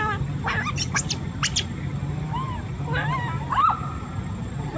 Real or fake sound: real